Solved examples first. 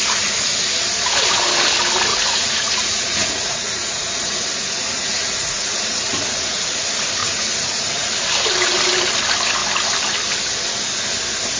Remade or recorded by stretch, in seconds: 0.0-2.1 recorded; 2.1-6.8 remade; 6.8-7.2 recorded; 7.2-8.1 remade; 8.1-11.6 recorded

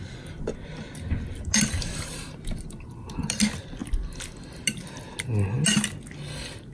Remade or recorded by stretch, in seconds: 0.0-6.7 recorded